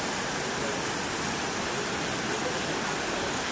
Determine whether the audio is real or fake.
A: real